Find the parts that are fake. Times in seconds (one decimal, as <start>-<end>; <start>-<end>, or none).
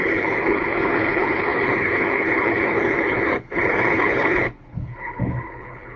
0.0-6.0